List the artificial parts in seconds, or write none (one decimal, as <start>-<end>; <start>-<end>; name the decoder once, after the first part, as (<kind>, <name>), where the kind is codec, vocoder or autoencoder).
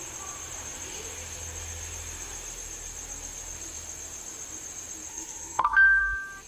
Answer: 5.1-6.0 (codec, SNAC)